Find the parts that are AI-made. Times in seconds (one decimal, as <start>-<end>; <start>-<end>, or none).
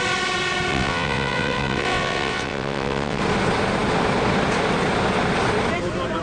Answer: 0.7-3.2